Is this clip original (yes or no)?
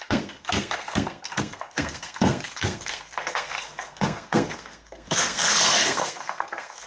no